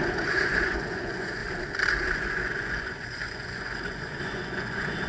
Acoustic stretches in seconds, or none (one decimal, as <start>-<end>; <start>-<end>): 1.4-1.9